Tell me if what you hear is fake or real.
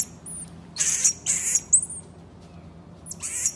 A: real